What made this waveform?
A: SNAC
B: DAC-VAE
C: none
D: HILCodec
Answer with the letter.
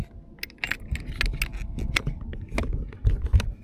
C